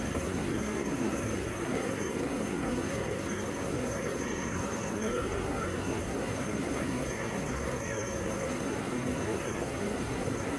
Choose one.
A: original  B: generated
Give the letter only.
B